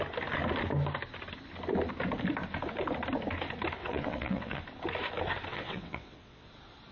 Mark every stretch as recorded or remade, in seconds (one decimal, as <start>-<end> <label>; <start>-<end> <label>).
0.0-3.8 recorded; 3.8-4.6 remade; 4.6-5.5 recorded; 5.5-6.5 remade; 6.5-6.9 recorded